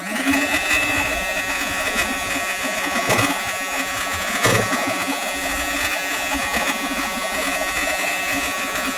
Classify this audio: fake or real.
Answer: fake